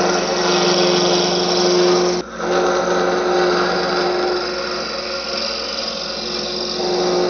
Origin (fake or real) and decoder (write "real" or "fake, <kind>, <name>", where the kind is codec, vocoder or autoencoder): real